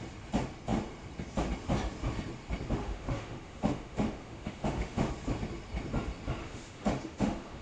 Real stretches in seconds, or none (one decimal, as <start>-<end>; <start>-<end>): 0.0-2.8; 5.1-6.4